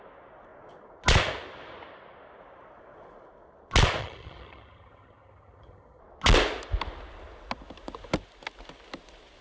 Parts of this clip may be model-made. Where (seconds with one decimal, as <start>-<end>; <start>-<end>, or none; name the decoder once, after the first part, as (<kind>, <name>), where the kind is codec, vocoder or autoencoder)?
4.0-6.0 (vocoder, HiFi-GAN)